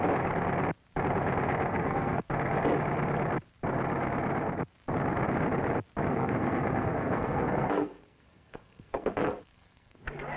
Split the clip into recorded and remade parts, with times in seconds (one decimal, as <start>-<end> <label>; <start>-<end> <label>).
0.0-1.7 recorded; 1.7-2.3 remade; 2.3-6.1 recorded; 6.1-10.0 remade; 10.0-10.4 recorded